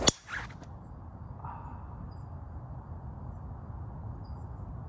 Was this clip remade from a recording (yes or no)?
no